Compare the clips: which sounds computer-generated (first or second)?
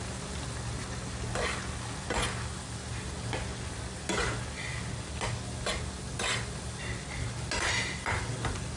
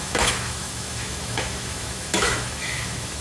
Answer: second